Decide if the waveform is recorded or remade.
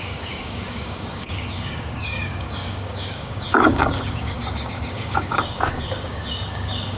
remade